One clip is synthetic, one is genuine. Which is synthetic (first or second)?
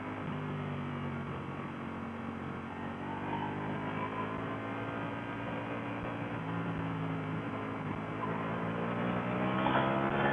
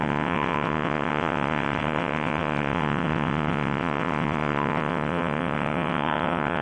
second